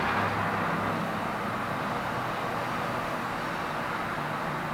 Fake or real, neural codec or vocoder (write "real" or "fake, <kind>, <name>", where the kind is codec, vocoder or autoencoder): real